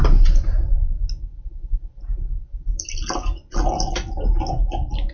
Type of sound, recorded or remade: recorded